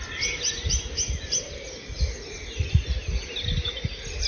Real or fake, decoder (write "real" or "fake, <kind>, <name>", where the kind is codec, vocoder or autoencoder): real